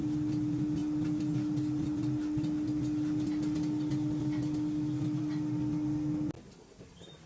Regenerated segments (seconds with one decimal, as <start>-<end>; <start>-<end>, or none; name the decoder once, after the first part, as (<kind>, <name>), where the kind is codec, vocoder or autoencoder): none